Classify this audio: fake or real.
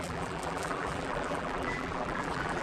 fake